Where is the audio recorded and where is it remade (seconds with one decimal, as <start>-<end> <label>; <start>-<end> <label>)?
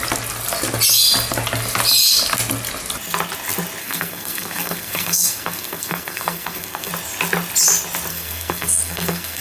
0.0-3.8 recorded; 3.8-6.9 remade; 6.9-8.1 recorded; 8.1-9.4 remade